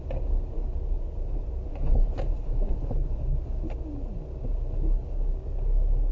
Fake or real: real